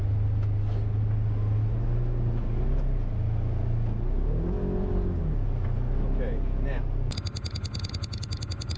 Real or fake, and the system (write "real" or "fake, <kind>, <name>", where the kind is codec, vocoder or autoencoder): real